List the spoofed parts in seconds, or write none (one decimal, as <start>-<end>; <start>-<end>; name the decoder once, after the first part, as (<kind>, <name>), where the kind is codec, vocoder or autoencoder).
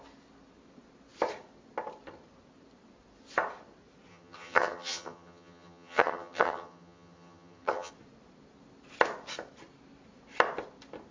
4.1-7.9 (vocoder, HiFi-GAN)